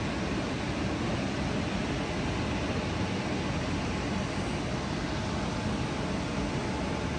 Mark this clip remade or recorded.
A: recorded